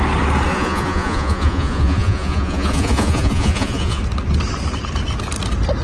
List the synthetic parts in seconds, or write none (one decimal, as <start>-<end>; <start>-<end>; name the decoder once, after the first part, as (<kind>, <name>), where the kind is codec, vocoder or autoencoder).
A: 0.5-4.0 (vocoder, Vocos)